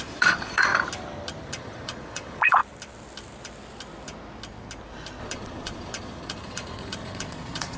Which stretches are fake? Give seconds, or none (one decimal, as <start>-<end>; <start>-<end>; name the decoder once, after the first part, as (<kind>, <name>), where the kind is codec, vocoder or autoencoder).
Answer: 0.0-0.7 (vocoder, Vocos); 1.5-2.6; 5.2-7.8